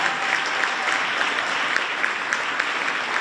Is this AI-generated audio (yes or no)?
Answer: no